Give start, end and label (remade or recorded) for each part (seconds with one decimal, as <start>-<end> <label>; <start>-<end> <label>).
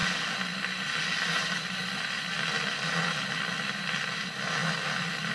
0.0-5.3 recorded